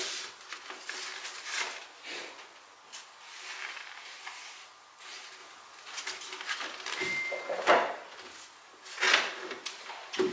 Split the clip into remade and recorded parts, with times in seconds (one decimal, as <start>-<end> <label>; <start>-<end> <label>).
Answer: 0.0-2.0 recorded; 2.0-2.6 remade; 2.6-10.3 recorded